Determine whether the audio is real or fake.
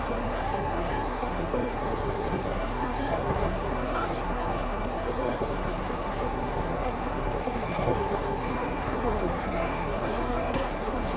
fake